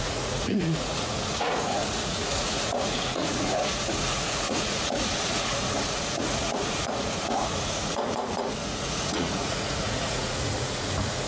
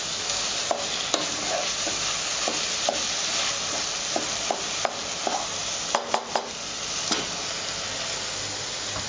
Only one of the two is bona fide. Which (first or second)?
second